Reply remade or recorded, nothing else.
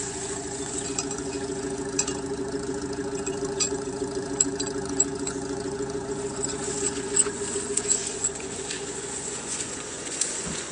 remade